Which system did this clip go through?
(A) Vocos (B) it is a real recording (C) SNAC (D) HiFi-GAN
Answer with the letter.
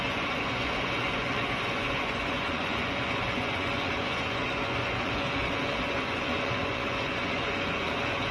A